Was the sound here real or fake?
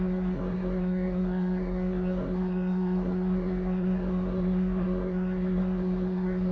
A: fake